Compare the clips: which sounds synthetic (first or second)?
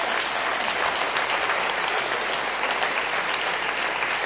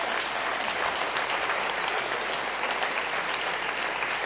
second